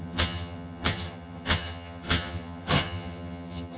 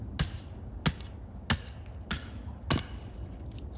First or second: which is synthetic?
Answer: first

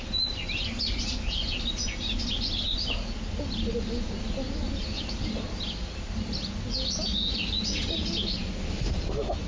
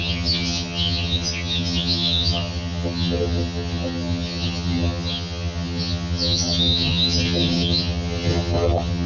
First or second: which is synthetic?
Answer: second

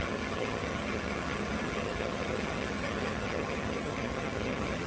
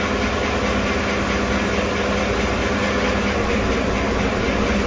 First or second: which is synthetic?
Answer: first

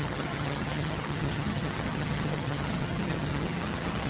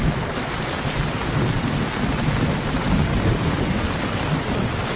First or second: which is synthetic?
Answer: first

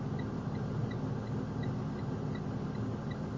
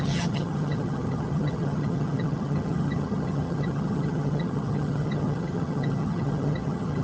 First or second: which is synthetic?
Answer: second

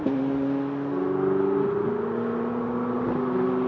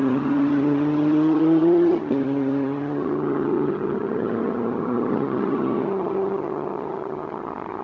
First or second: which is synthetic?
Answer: second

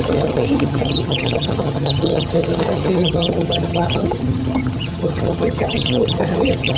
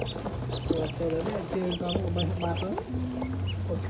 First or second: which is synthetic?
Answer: first